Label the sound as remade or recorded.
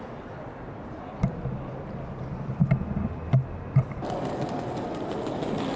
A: recorded